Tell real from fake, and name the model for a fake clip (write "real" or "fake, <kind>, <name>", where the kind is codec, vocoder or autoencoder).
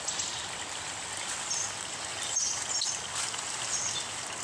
real